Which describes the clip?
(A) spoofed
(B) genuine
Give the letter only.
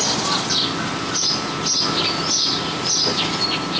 B